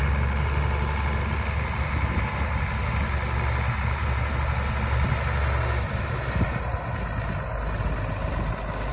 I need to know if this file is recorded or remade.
recorded